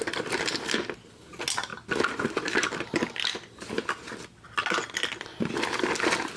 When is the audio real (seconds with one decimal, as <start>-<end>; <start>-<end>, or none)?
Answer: 0.0-6.4